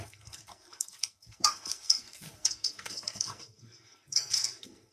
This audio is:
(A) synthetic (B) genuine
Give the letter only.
A